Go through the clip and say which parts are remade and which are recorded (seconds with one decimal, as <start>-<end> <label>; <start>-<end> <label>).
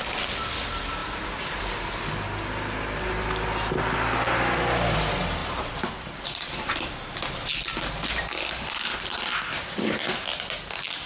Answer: 0.0-1.0 recorded; 1.0-1.7 remade; 1.7-5.4 recorded; 5.4-7.6 remade; 7.6-9.1 recorded; 9.1-10.1 remade; 10.1-11.1 recorded